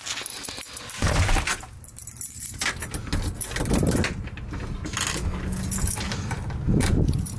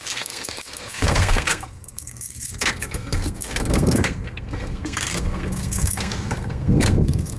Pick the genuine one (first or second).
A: first